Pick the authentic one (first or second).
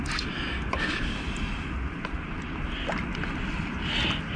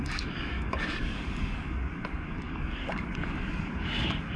first